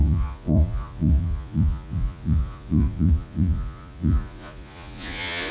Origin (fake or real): fake